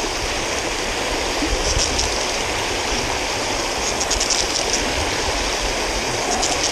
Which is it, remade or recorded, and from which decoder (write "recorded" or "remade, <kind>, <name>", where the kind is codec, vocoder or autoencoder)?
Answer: recorded